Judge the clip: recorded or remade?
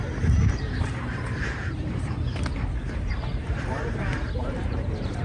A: remade